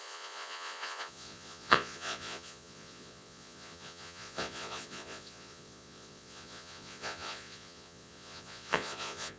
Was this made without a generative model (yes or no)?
no